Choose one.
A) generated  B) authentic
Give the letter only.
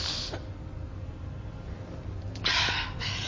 B